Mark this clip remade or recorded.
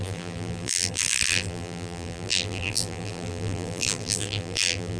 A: remade